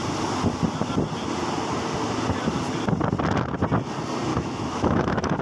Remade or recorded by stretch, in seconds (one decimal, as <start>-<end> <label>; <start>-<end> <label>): 0.0-4.3 recorded; 4.3-5.4 remade